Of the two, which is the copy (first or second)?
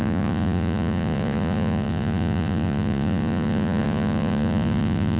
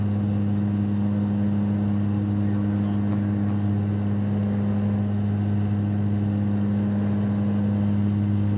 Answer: first